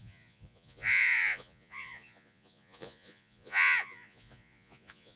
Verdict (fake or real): fake